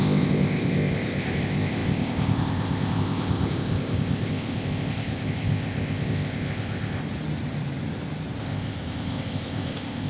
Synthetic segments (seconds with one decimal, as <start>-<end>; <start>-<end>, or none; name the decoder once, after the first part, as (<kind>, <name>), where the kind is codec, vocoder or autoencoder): 0.0-7.0 (codec, ZipCodec); 8.4-10.1